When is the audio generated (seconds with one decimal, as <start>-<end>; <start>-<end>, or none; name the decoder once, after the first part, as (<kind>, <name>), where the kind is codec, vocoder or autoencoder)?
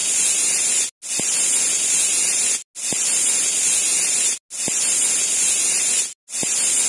none